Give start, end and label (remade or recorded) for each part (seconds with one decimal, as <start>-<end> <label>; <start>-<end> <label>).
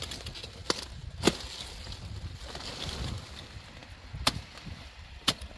0.0-5.6 recorded